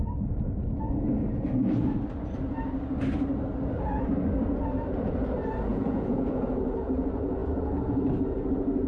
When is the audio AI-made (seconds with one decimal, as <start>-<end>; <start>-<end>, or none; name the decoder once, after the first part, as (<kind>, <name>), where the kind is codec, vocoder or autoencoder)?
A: 5.7-6.5 (vocoder, Vocos)